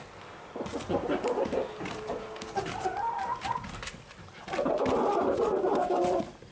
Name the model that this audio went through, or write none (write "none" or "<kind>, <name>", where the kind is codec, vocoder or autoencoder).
none